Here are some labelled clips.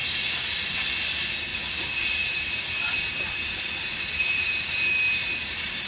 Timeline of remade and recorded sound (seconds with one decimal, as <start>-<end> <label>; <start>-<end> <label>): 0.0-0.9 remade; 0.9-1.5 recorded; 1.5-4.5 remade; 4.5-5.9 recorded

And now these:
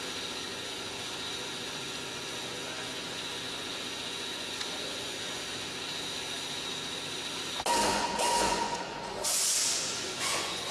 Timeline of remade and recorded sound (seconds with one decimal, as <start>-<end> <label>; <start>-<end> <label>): 0.0-0.5 recorded; 0.5-5.4 remade; 5.4-7.9 recorded; 7.9-10.7 remade

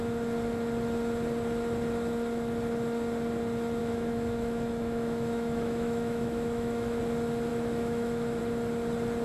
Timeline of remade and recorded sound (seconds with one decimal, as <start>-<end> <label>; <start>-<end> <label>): 0.0-3.8 recorded; 3.8-7.0 remade; 7.0-7.5 recorded; 7.5-8.4 remade; 8.4-9.2 recorded